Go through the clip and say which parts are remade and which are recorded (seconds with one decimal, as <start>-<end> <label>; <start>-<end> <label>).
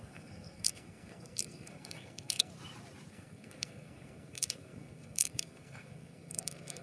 0.0-2.5 remade; 2.5-3.1 recorded; 3.1-6.8 remade